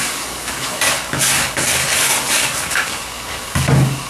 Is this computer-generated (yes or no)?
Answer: yes